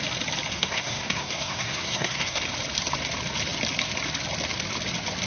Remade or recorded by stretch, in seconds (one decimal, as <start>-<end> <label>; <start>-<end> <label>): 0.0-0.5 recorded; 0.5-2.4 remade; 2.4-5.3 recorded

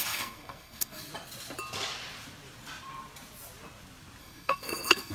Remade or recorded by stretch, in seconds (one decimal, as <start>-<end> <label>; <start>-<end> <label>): 0.0-1.1 remade; 1.1-4.2 recorded; 4.2-5.1 remade

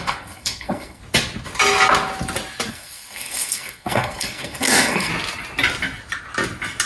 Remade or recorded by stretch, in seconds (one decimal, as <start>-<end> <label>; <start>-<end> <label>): 0.0-1.0 remade; 1.0-2.7 recorded; 2.7-5.1 remade; 5.1-6.9 recorded

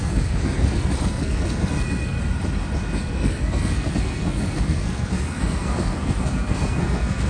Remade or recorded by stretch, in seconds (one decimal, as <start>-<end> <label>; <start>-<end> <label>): 0.0-2.2 remade; 2.2-3.0 recorded; 3.0-7.3 remade

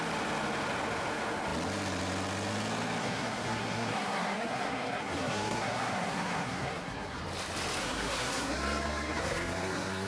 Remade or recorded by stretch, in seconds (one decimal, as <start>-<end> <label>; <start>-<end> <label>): 0.0-3.0 recorded; 3.0-7.2 remade; 7.2-7.8 recorded; 7.8-10.1 remade